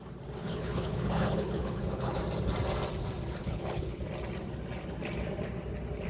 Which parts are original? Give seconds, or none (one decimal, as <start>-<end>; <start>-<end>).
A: 0.0-0.4; 2.2-3.4; 4.0-6.1